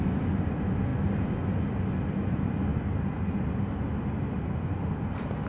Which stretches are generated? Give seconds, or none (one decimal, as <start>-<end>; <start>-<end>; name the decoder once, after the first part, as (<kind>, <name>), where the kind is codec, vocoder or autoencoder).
none